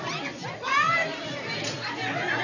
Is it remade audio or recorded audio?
recorded